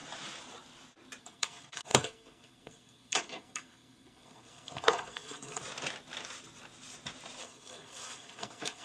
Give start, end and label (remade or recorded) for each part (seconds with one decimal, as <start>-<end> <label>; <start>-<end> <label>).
0.0-1.2 recorded; 1.2-5.6 remade; 5.6-7.4 recorded; 7.4-8.8 remade